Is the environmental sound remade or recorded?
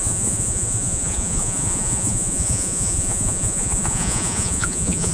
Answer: remade